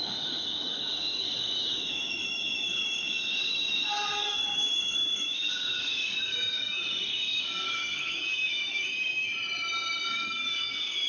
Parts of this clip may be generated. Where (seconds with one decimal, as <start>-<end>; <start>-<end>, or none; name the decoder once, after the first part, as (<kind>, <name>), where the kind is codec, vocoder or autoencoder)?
0.0-9.3 (codec, DAC); 10.0-11.1